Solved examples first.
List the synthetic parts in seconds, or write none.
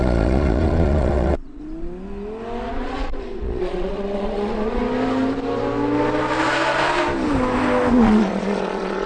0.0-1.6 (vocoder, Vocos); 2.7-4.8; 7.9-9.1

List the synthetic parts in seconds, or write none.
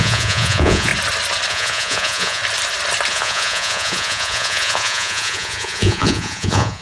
0.0-0.9 (vocoder, Vocos); 1.5-2.4; 3.1-6.8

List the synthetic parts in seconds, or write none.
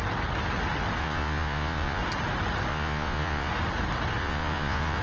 1.0-2.0 (vocoder, Vocos); 2.7-3.5; 4.2-5.0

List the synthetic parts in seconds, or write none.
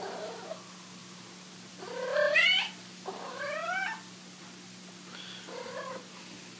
none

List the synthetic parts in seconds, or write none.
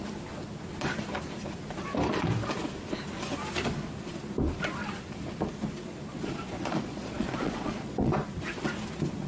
6.1-8.1 (vocoder, Vocos)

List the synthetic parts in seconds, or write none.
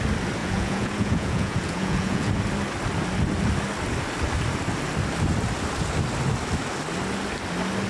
0.4-2.3 (vocoder, Vocos)